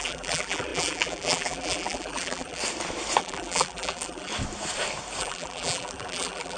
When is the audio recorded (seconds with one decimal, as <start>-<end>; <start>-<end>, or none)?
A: 2.6-3.2; 4.3-5.2